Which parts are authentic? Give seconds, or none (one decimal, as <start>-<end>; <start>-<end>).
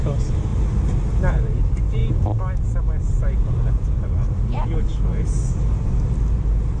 0.5-1.3; 2.0-6.1